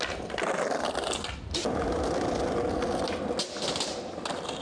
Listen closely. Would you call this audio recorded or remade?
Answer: recorded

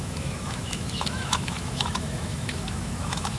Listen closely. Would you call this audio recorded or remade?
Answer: remade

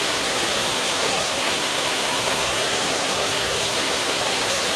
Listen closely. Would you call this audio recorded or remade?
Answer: remade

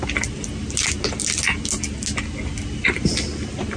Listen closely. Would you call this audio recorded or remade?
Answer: recorded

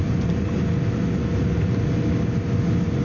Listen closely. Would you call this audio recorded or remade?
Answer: recorded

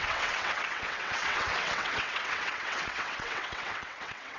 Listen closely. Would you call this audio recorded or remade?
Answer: remade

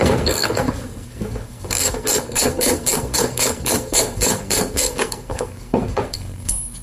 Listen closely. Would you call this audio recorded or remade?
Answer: remade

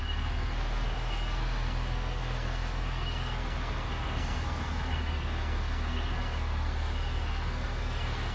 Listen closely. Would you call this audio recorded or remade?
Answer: remade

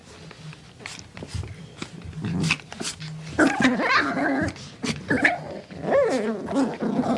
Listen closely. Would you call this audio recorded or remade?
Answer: recorded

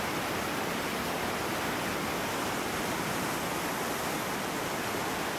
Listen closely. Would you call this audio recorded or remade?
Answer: recorded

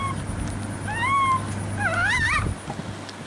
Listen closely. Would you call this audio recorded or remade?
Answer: recorded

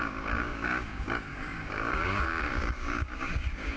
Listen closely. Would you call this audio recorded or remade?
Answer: remade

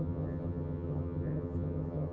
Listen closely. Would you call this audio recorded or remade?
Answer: remade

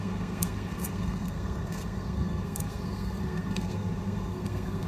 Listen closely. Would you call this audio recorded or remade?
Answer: remade